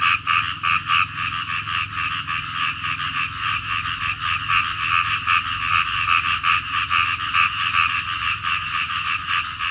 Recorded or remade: recorded